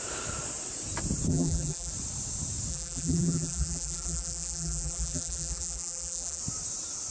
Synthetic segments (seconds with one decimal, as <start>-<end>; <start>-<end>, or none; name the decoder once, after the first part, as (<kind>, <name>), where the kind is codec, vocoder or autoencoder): 1.3-1.9 (vocoder, BigVGAN v2); 2.7-6.4